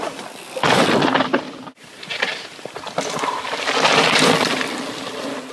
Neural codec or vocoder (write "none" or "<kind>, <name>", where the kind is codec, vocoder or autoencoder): vocoder, BigVGAN v2